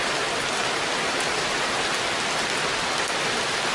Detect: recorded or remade recorded